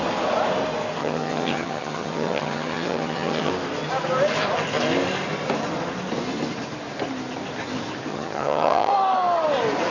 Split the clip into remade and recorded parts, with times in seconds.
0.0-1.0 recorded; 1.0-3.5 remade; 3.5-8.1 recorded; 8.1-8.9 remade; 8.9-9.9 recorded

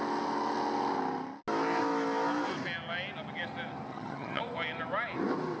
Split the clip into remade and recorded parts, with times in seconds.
0.0-3.9 recorded; 3.9-4.4 remade; 4.4-5.6 recorded